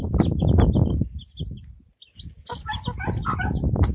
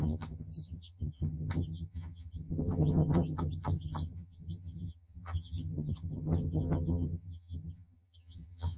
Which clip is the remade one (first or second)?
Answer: second